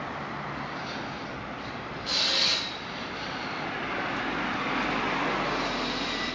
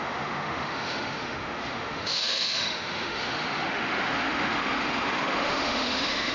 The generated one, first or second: second